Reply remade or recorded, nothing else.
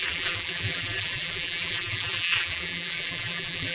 remade